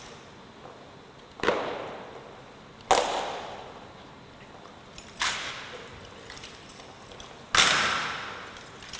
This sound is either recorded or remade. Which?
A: recorded